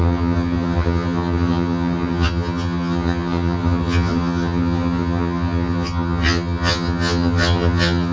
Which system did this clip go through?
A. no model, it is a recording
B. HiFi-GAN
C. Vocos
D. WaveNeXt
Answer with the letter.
B